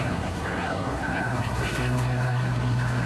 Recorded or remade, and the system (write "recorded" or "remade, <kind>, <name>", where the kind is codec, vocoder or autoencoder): remade, codec, SNAC